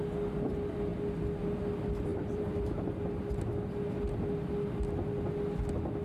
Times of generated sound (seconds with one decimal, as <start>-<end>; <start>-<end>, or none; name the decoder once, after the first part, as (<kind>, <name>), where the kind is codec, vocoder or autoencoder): 2.1-2.9 (vocoder, BigVGAN v2)